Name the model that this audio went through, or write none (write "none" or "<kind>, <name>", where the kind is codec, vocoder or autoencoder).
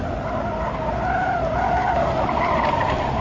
none